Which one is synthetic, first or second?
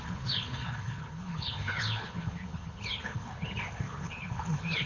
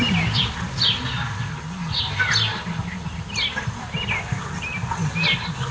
first